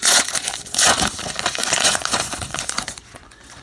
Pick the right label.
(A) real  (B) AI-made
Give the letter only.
B